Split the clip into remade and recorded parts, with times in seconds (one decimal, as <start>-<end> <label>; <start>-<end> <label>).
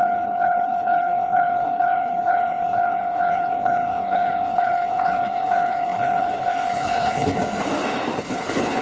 0.0-7.4 remade; 7.4-8.2 recorded; 8.2-8.8 remade